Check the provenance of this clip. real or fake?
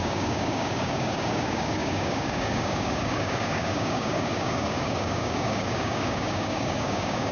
fake